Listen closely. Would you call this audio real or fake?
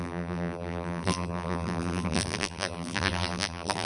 fake